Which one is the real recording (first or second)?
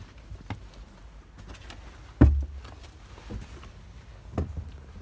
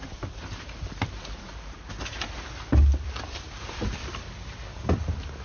first